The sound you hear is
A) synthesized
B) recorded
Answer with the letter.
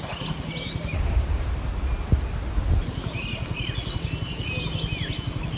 B